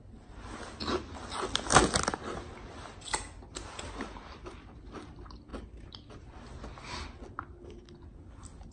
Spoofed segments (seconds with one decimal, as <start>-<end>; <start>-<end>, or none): none